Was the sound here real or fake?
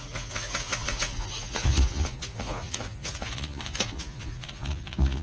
fake